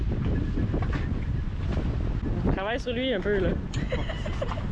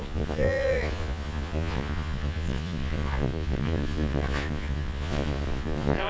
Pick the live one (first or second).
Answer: first